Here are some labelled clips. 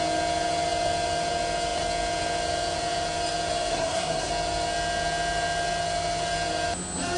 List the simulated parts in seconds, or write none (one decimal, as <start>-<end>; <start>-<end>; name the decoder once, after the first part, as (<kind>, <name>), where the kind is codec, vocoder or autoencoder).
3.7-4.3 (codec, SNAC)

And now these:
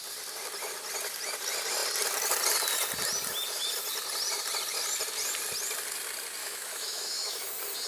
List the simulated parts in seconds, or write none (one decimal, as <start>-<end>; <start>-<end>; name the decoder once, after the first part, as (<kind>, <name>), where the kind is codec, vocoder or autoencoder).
6.4-7.5 (autoencoder, DAC-VAE)

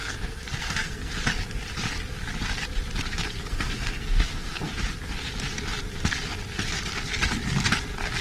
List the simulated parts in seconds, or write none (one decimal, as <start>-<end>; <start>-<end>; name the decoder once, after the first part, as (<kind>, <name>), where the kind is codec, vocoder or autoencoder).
0.0-1.1 (codec, SNAC); 3.4-4.7

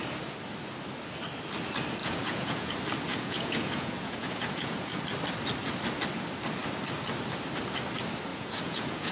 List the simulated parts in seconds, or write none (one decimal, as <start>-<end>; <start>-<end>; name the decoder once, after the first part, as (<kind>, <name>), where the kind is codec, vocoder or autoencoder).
2.0-2.7 (vocoder, Vocos); 3.1-5.0; 8.3-9.1

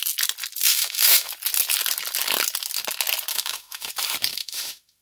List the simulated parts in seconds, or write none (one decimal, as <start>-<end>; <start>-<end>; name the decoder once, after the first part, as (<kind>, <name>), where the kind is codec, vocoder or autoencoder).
0.6-1.3 (autoencoder, DAC-VAE); 3.3-3.9; 4.3-5.0

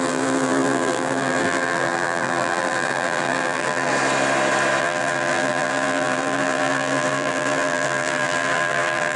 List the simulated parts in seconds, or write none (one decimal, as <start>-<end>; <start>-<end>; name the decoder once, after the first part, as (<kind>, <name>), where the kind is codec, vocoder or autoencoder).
0.0-3.9 (vocoder, BigVGAN v2); 4.8-9.2